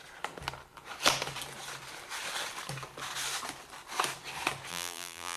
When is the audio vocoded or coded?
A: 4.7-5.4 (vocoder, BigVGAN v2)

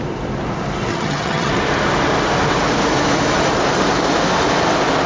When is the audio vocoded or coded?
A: 0.9-1.5 (vocoder, HiFi-GAN)

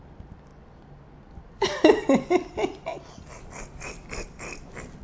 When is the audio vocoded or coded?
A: none

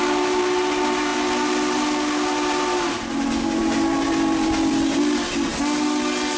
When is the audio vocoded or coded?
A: none

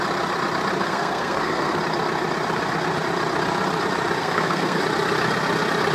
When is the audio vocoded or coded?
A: 0.8-1.8 (codec, SNAC); 4.2-4.8

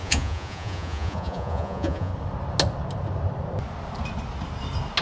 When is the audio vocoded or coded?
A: 0.0-2.1 (vocoder, Vocos)

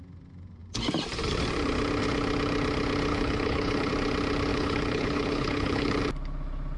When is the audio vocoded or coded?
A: 3.1-3.9 (codec, HILCodec); 4.5-6.0

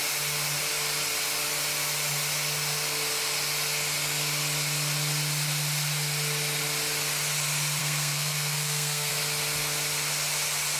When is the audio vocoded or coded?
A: 7.8-9.1 (codec, SNAC)